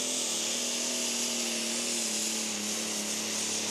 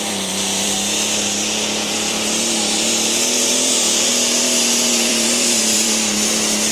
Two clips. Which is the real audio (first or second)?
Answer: first